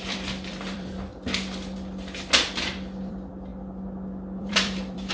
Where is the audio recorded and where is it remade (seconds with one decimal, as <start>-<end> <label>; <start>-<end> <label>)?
0.0-1.1 remade; 1.1-3.1 recorded; 3.1-3.5 remade; 3.5-4.4 recorded; 4.4-5.1 remade